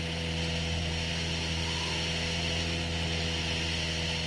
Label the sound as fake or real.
real